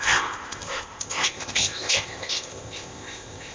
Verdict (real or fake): fake